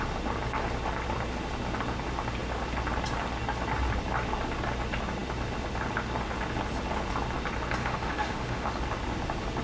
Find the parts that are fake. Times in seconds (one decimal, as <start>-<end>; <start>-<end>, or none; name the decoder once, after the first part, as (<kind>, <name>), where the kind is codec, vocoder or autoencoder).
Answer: 7.8-8.7 (autoencoder, DAC-VAE)